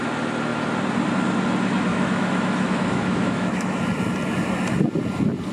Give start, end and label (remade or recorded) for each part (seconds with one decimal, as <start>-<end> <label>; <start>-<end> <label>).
0.0-1.9 recorded; 1.9-3.8 remade; 3.8-5.5 recorded